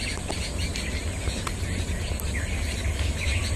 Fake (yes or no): no